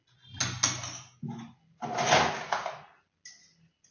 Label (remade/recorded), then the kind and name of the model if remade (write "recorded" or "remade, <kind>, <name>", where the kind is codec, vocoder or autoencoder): recorded